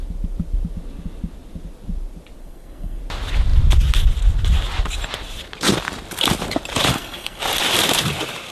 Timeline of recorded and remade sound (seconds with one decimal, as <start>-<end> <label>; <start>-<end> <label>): 0.0-2.4 recorded; 2.4-3.0 remade; 3.0-6.9 recorded; 6.9-7.4 remade; 7.4-8.5 recorded